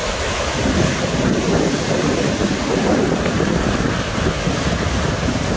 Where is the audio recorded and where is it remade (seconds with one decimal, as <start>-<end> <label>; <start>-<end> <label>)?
0.0-0.5 remade; 0.5-5.6 recorded